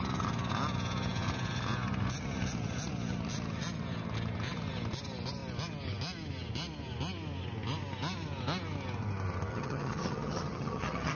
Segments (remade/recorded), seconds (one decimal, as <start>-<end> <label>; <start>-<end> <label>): 0.0-9.5 recorded; 9.5-11.2 remade